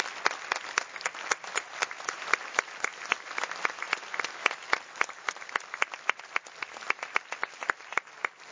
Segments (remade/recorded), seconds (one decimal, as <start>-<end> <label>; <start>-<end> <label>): 0.0-8.5 recorded